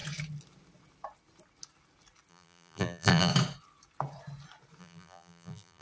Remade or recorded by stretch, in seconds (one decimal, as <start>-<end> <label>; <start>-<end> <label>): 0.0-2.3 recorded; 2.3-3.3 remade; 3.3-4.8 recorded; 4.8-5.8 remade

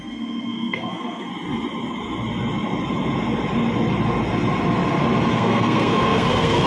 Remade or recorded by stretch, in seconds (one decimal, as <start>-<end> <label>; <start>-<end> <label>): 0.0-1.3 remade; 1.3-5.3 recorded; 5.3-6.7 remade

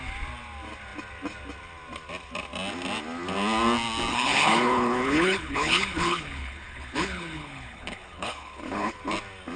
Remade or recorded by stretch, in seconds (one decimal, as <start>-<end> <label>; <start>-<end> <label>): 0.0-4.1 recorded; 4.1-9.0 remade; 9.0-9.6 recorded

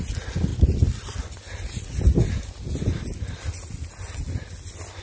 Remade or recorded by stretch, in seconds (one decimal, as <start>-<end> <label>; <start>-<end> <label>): 0.0-5.0 recorded